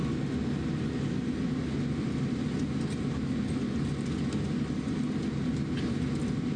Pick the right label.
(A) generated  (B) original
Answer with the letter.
B